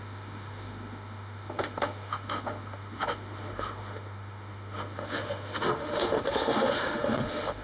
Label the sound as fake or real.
fake